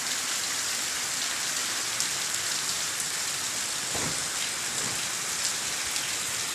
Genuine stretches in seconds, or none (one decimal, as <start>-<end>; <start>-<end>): 0.0-1.6; 4.4-6.5